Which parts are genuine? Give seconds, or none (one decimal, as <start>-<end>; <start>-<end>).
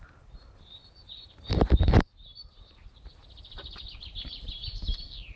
0.8-4.0